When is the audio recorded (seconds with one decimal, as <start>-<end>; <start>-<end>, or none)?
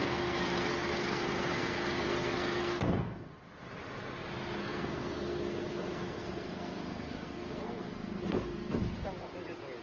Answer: 3.3-4.6; 8.7-9.8